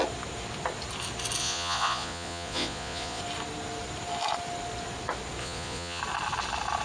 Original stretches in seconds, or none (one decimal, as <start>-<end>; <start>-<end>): 0.0-1.4; 3.2-5.4; 6.0-6.8